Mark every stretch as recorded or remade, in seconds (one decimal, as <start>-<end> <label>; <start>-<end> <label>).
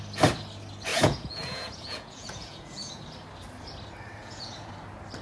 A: 0.0-0.9 recorded; 0.9-3.0 remade; 3.0-4.2 recorded; 4.2-4.7 remade; 4.7-5.2 recorded